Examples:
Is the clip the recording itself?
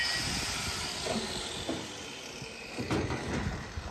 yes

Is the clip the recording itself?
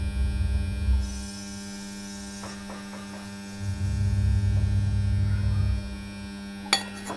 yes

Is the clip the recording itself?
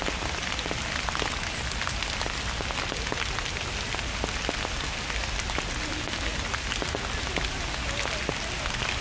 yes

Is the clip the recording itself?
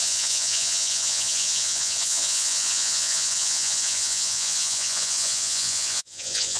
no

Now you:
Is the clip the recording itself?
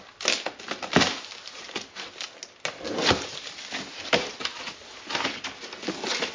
yes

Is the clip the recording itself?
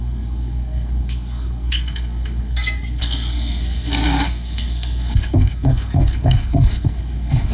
no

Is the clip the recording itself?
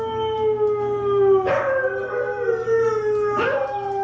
yes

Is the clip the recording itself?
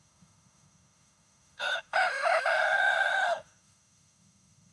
no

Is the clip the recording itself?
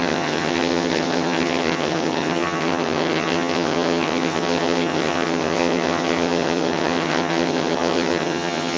no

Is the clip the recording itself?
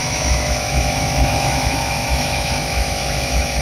no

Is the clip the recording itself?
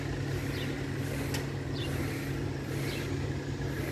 yes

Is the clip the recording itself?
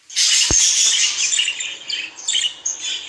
yes